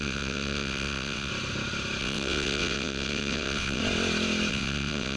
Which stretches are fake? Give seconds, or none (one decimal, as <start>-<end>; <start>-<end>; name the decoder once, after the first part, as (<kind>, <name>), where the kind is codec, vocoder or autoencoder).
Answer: 0.0-1.3 (vocoder, WaveNeXt); 2.0-3.8; 4.5-5.2